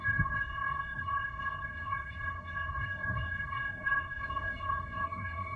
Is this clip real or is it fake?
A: fake